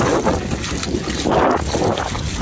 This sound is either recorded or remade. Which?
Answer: recorded